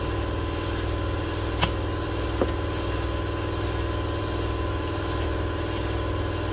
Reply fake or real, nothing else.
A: real